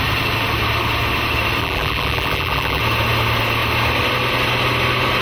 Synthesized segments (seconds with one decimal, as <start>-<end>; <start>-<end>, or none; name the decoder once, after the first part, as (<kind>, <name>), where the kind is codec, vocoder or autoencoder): 1.6-2.8 (vocoder, BigVGAN v2)